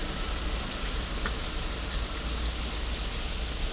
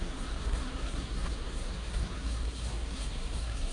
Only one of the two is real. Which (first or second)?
first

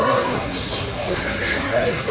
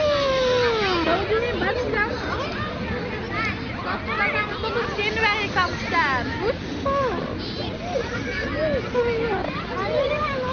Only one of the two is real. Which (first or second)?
second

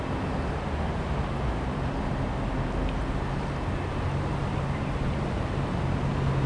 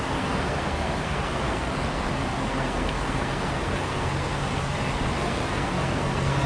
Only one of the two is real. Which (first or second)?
first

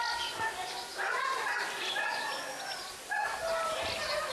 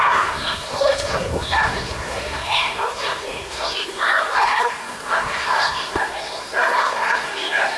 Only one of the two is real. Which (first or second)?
first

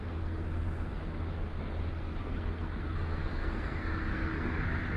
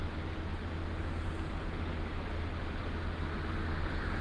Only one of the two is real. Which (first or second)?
second